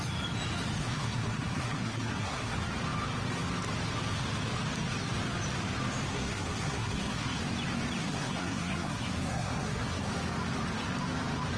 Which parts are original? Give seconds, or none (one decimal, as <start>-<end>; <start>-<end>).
0.0-0.8; 2.5-6.1; 7.4-8.0; 10.1-11.6